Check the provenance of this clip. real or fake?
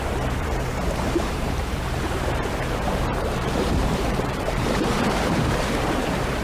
fake